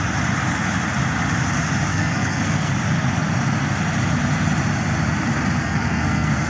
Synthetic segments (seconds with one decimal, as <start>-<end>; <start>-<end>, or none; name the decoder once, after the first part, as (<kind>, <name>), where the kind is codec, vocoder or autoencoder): 1.9-2.7 (codec, SNAC); 5.6-6.5